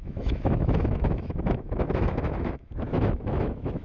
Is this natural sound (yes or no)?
no